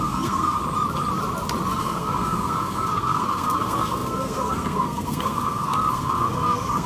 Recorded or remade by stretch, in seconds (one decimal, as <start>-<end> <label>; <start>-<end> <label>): 0.0-0.6 remade; 0.6-1.8 recorded; 1.8-6.9 remade